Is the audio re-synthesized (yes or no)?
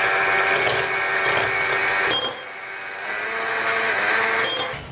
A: no